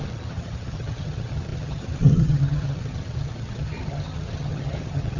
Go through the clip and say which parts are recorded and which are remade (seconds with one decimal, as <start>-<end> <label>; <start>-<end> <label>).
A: 0.0-5.2 remade

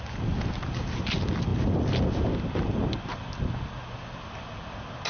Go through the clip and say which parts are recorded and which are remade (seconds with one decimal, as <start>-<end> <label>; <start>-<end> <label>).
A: 0.0-5.1 recorded

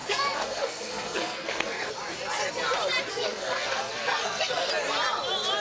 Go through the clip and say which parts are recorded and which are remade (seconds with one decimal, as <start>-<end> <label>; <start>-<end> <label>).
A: 0.0-1.9 remade; 1.9-3.1 recorded; 3.1-4.7 remade; 4.7-5.6 recorded

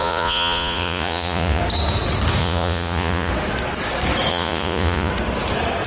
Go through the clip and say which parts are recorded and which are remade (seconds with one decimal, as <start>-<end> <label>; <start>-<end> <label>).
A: 0.0-1.6 remade; 1.6-2.4 recorded; 2.4-3.3 remade; 3.3-4.3 recorded; 4.3-5.1 remade; 5.1-5.9 recorded

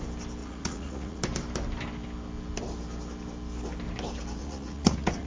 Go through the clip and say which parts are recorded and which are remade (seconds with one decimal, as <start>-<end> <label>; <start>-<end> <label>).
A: 0.0-0.4 recorded; 0.4-1.2 remade; 1.2-4.4 recorded; 4.4-5.3 remade